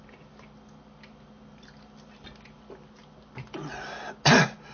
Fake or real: real